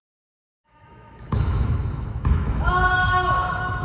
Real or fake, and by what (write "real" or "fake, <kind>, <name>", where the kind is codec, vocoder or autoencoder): fake, autoencoder, DAC-VAE